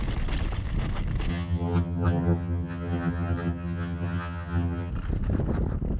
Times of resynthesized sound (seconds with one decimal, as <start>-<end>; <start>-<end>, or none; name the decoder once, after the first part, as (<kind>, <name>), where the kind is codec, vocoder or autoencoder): 1.3-4.9 (vocoder, HiFi-GAN)

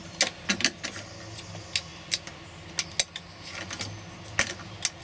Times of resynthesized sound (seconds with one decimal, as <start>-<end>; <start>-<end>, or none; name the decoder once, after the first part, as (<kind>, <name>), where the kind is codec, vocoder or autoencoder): none